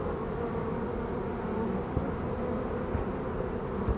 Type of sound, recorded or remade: recorded